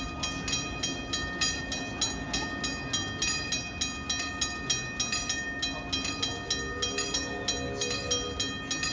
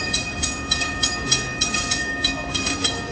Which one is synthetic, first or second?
second